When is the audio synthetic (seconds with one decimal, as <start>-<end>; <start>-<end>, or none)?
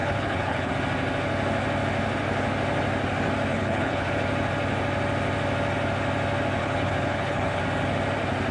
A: 0.0-0.7; 3.5-4.1; 6.6-7.6